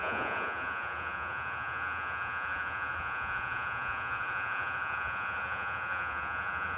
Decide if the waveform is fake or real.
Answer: fake